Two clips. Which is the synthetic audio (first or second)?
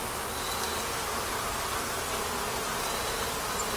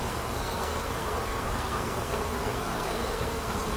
second